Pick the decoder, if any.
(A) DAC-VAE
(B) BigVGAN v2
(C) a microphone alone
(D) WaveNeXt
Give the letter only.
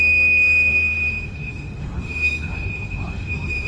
A